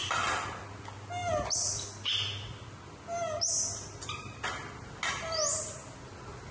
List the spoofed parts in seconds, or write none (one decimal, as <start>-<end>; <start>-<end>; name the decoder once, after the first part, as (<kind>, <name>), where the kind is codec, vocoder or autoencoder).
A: none